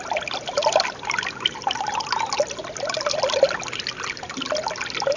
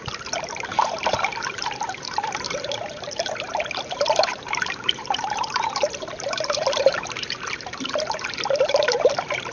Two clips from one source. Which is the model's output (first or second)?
second